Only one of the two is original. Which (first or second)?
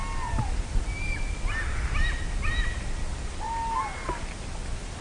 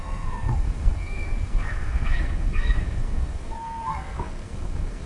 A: first